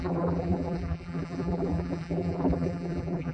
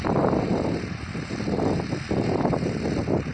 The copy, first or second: first